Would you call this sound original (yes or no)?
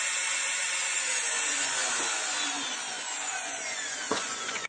no